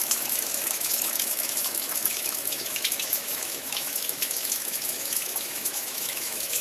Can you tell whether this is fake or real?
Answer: fake